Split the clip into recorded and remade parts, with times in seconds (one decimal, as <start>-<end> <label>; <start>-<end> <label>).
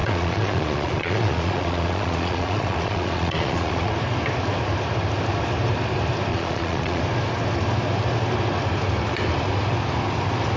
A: 0.0-3.9 remade; 3.9-6.3 recorded; 6.3-7.0 remade; 7.0-10.6 recorded